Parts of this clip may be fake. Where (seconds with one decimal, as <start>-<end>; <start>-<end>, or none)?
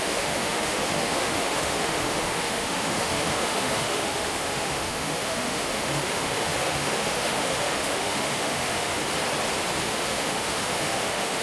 0.0-9.0; 9.8-11.4